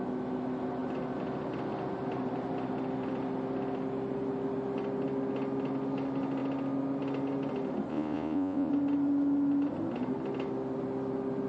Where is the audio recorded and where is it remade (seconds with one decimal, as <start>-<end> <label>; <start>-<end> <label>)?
0.0-7.9 recorded; 7.9-8.7 remade; 8.7-11.5 recorded